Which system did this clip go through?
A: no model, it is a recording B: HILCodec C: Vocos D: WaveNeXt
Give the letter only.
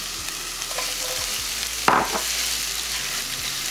A